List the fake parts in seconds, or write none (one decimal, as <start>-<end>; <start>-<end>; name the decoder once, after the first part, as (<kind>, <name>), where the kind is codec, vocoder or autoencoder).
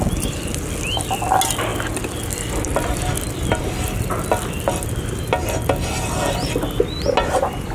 none